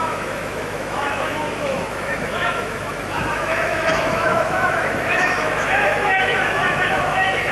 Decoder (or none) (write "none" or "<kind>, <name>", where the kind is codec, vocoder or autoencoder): autoencoder, DAC-VAE